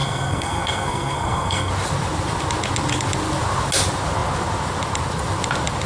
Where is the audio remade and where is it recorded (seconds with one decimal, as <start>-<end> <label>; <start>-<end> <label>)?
0.0-1.7 remade; 1.7-5.9 recorded